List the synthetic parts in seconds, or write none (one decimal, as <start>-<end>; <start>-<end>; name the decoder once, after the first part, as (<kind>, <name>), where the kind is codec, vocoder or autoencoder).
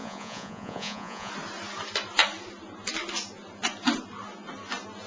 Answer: 0.0-1.3 (vocoder, Vocos)